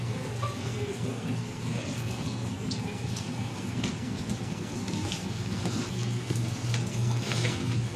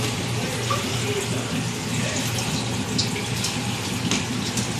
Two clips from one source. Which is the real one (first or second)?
second